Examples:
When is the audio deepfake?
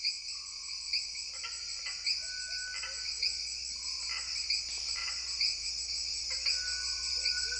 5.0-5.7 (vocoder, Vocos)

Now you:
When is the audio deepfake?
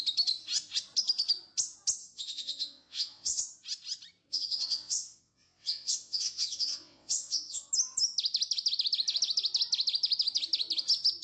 2.0-3.4 (vocoder, WaveNeXt); 4.3-7.7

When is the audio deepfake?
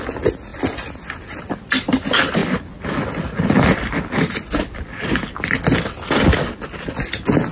none